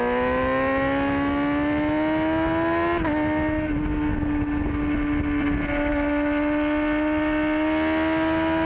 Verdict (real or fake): real